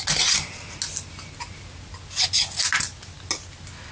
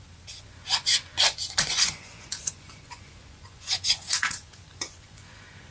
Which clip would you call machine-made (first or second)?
second